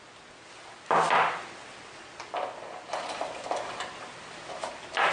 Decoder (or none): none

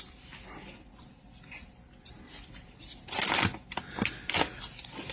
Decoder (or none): none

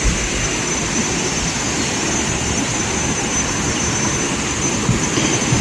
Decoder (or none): vocoder, BigVGAN v2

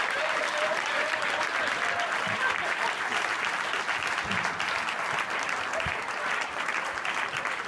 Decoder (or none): none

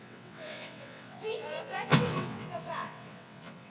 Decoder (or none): vocoder, WaveNeXt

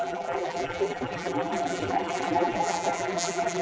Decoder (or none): vocoder, BigVGAN v2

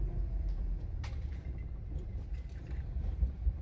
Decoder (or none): vocoder, BigVGAN v2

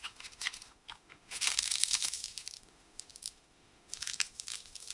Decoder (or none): autoencoder, DAC-VAE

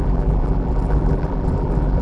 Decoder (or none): vocoder, BigVGAN v2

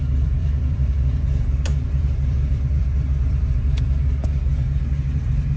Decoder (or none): vocoder, BigVGAN v2